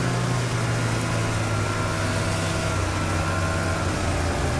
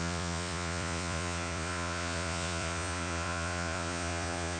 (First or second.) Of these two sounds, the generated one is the second